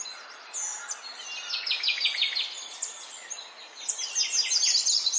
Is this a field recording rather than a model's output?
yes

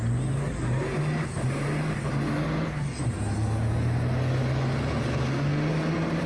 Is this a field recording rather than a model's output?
yes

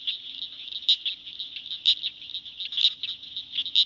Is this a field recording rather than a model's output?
yes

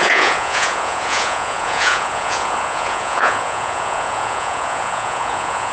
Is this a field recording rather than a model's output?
no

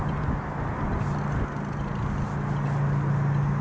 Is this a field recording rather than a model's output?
yes